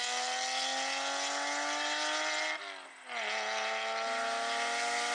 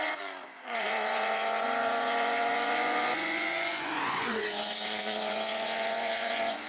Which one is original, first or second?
first